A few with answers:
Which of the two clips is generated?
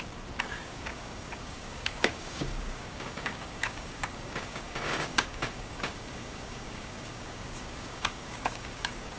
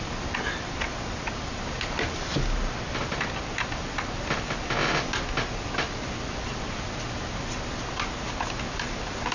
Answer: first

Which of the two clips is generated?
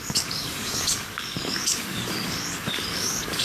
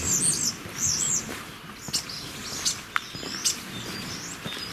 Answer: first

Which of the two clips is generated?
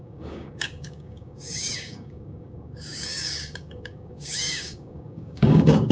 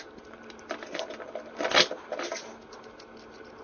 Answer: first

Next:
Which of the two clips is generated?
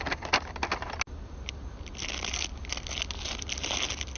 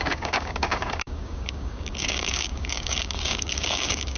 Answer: second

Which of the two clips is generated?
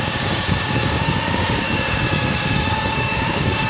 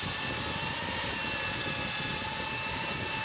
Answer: first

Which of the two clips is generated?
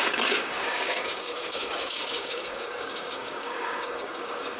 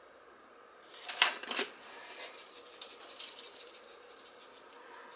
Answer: first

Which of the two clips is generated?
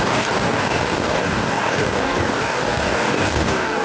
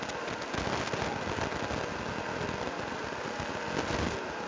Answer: first